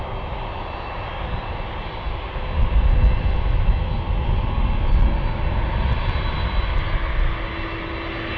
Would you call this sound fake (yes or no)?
no